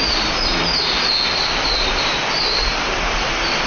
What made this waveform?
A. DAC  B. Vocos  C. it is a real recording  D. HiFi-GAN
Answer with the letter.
C